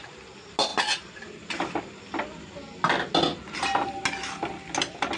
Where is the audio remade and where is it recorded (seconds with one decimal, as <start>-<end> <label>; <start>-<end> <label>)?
0.0-5.2 recorded